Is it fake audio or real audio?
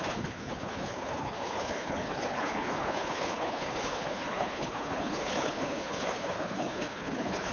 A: fake